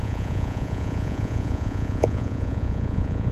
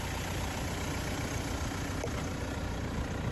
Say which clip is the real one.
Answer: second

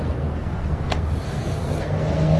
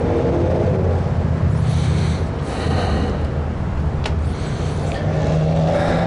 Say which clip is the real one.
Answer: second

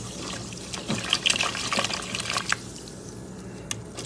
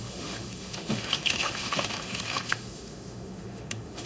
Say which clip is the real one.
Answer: first